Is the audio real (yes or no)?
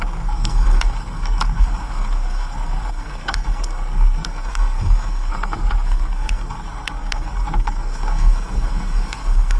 no